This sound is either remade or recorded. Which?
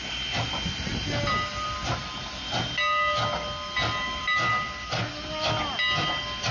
recorded